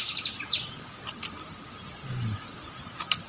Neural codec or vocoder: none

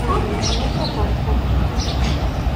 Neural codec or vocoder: none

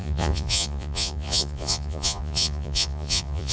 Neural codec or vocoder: vocoder, Vocos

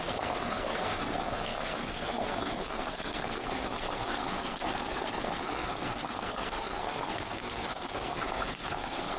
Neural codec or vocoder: codec, SNAC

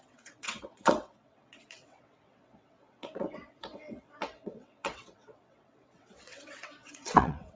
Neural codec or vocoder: vocoder, WaveNeXt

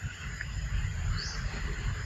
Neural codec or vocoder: none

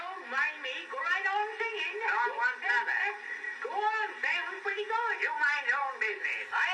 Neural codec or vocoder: none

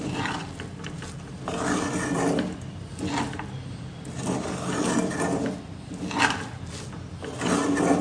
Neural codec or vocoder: none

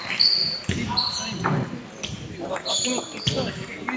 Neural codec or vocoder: none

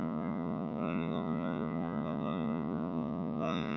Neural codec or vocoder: vocoder, Vocos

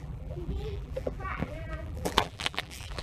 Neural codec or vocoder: vocoder, BigVGAN v2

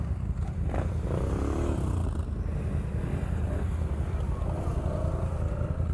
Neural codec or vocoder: none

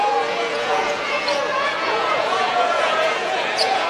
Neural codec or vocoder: vocoder, Vocos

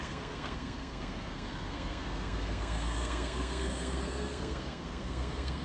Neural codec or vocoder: codec, SNAC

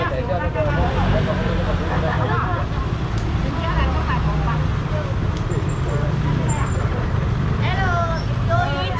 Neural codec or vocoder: none